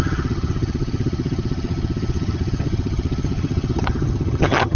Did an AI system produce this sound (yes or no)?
yes